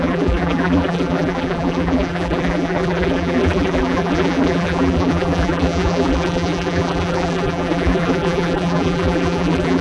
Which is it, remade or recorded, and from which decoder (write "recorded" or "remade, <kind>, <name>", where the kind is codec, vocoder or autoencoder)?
remade, vocoder, BigVGAN v2